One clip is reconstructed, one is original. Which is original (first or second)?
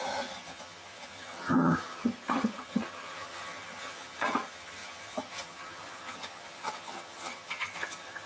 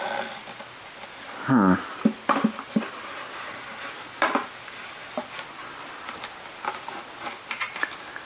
second